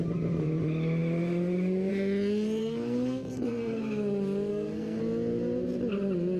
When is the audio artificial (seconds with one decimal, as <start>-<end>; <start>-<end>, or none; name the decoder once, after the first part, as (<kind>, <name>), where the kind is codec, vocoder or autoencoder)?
2.6-3.8 (codec, SNAC); 4.5-5.0